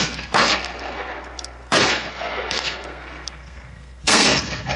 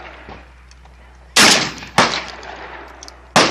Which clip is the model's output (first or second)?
first